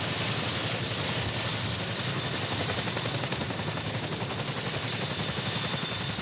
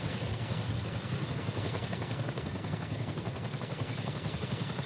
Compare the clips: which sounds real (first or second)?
first